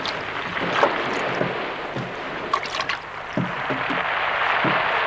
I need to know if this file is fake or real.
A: real